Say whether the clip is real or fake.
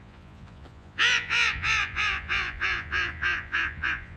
fake